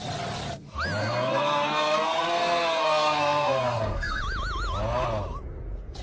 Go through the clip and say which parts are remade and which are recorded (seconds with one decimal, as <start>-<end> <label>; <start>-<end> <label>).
0.0-1.0 recorded; 1.0-4.2 remade; 4.2-6.0 recorded

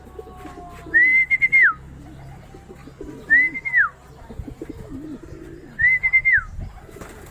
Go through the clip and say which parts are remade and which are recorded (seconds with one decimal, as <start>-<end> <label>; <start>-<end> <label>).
0.0-7.3 recorded

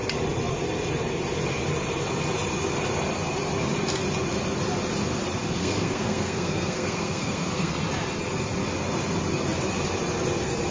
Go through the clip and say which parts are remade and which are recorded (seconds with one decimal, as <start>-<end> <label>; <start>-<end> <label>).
0.0-5.4 recorded; 5.4-7.7 remade; 7.7-10.7 recorded

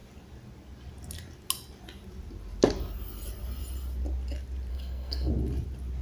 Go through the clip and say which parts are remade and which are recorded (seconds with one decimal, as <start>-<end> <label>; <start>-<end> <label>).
0.0-4.7 recorded; 4.7-5.3 remade; 5.3-6.0 recorded

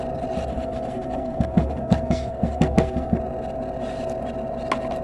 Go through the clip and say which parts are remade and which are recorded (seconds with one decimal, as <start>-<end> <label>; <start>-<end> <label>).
0.0-0.5 recorded; 0.5-3.2 remade; 3.2-5.0 recorded